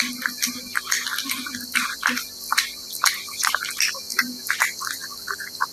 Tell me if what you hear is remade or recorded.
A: recorded